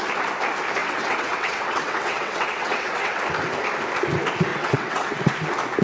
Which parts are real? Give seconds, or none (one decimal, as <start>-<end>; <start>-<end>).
0.0-0.8; 3.2-4.5; 5.3-5.8